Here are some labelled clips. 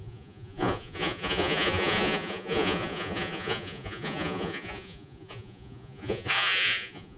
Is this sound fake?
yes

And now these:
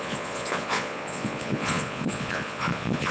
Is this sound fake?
yes